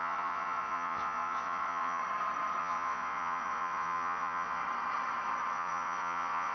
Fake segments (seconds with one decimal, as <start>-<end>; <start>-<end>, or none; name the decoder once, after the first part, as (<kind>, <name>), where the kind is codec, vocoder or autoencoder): 0.0-2.0 (vocoder, Vocos); 2.6-4.6; 5.5-6.5